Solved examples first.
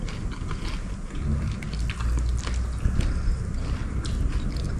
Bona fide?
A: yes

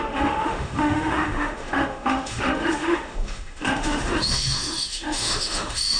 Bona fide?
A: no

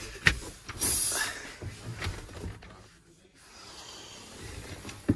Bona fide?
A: yes